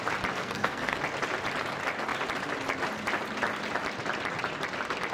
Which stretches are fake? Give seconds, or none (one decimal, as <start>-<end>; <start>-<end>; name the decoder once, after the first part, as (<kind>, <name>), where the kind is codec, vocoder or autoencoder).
0.4-1.0 (codec, SNAC)